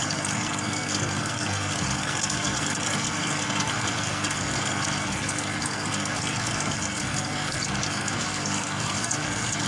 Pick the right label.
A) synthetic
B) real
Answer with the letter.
A